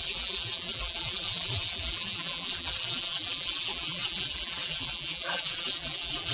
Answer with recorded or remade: remade